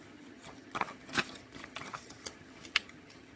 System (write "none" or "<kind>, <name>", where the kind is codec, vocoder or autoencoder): vocoder, HiFi-GAN